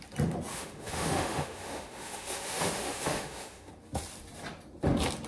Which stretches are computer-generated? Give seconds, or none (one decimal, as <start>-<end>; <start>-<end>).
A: 0.5-3.7